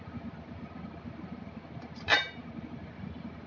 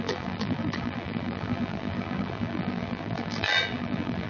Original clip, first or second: first